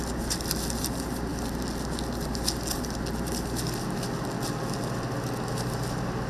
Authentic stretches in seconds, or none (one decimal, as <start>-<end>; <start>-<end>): 0.0-6.3